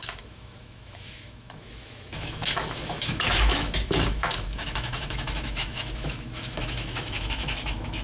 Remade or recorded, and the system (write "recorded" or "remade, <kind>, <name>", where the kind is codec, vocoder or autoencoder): remade, autoencoder, DAC-VAE